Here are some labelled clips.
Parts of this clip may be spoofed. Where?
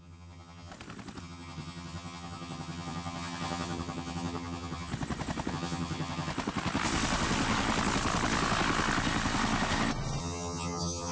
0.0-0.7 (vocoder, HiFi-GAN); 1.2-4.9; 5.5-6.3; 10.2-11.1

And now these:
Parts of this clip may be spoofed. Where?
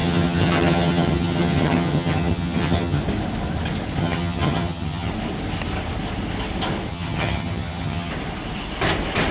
0.0-3.0 (vocoder, HiFi-GAN); 4.0-5.1; 6.9-8.1